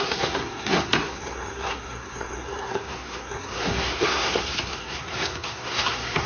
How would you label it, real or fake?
fake